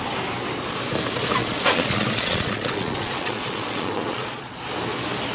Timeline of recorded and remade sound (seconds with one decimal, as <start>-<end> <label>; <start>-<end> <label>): 0.0-1.4 recorded; 1.4-4.6 remade; 4.6-5.3 recorded